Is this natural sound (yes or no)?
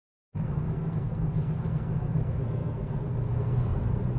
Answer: no